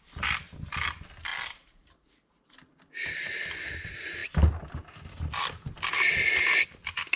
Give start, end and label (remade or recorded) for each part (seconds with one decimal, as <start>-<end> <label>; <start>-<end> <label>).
0.0-7.2 recorded